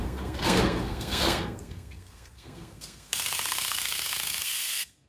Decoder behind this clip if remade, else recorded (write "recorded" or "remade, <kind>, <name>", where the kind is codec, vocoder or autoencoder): remade, codec, SNAC